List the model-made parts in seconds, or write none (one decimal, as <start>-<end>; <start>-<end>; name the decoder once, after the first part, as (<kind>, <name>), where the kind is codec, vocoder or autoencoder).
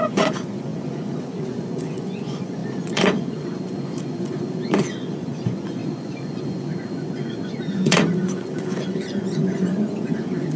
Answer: 0.0-10.6 (vocoder, Vocos)